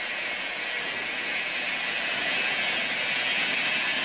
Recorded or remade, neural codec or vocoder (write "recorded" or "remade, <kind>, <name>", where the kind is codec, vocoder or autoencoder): recorded